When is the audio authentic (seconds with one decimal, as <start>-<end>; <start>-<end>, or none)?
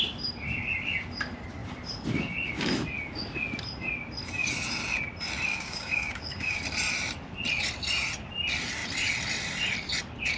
0.0-5.5; 6.6-10.4